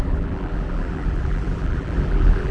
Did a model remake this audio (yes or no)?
yes